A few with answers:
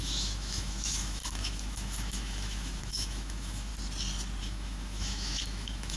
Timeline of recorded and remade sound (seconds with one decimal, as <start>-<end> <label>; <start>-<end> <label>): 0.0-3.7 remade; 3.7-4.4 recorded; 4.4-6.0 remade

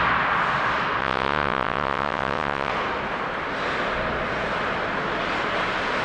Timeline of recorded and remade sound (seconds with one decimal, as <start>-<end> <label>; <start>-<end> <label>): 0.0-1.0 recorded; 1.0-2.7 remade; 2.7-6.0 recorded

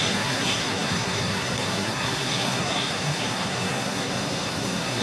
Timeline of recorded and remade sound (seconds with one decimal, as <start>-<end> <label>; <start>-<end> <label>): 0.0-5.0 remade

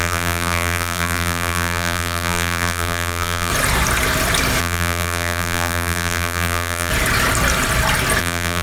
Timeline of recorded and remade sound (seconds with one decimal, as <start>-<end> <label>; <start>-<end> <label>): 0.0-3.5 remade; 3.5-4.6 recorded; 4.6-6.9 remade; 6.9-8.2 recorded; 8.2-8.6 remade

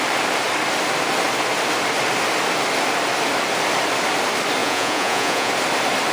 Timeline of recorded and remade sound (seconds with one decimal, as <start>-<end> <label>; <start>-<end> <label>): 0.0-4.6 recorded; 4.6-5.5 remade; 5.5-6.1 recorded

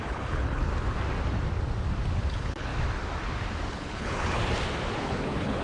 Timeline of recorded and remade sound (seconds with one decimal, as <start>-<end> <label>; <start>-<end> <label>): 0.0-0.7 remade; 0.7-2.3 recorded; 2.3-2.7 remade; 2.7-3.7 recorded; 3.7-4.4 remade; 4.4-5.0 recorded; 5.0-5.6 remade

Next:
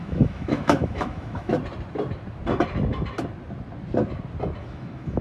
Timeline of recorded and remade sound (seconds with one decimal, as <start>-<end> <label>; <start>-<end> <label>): 0.0-1.5 remade; 1.5-4.6 recorded; 4.6-5.2 remade